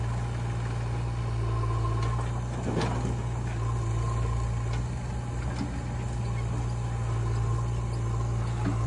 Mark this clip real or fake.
real